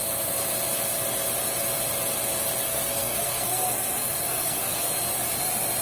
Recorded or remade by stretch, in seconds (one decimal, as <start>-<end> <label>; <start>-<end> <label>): 0.0-2.7 recorded; 2.7-4.9 remade; 4.9-5.8 recorded